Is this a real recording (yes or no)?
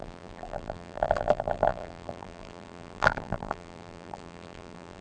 no